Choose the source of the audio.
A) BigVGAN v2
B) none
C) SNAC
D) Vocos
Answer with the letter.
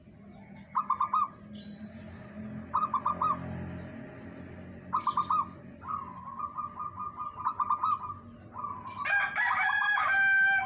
B